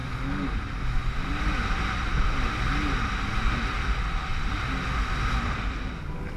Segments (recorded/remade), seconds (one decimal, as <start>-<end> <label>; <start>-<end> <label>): 0.0-0.6 remade; 0.6-1.0 recorded; 1.0-2.7 remade; 2.7-4.3 recorded; 4.3-6.4 remade